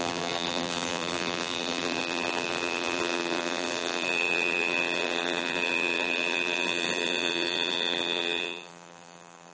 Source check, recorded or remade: remade